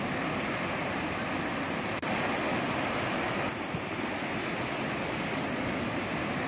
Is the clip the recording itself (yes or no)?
yes